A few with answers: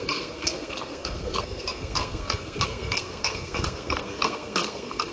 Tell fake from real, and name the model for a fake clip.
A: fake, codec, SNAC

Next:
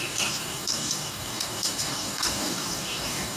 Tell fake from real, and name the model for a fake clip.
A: fake, codec, DAC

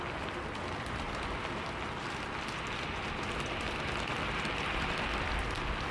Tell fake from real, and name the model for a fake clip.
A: real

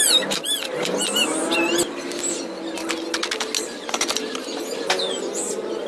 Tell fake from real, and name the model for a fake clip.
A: real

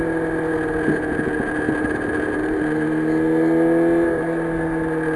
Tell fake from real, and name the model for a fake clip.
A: real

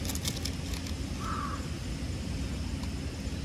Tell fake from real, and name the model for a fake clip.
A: real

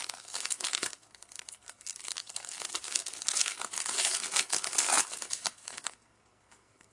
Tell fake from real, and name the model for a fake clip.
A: fake, codec, SNAC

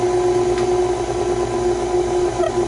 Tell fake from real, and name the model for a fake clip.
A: real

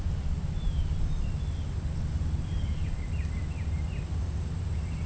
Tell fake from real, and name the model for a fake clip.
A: real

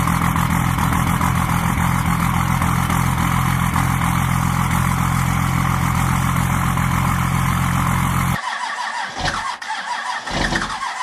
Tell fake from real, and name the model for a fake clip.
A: real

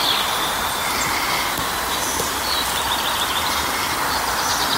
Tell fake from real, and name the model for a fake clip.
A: real